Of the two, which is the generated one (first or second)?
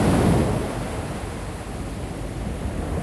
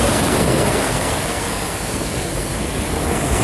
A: second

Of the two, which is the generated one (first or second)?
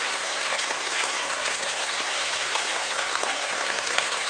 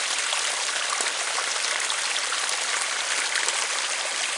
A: first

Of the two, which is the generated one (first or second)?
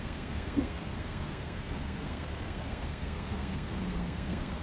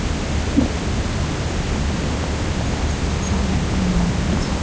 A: first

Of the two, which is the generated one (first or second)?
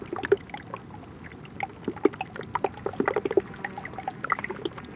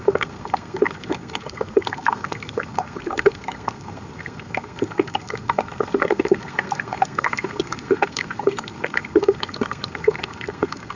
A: second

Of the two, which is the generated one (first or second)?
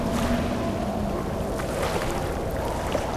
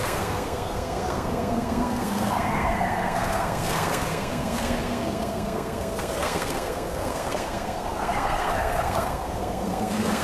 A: second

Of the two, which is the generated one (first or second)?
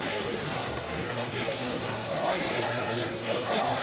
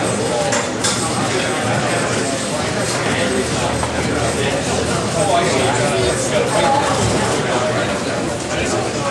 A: first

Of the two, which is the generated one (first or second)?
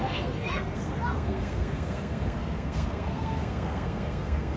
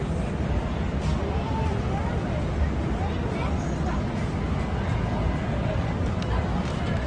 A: first